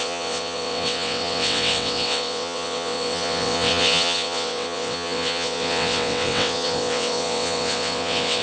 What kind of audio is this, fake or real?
fake